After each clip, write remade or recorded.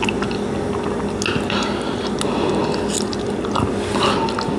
recorded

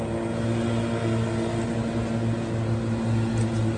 recorded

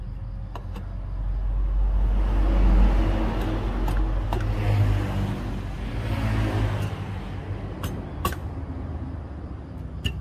recorded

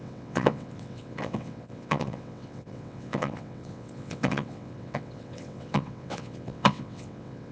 remade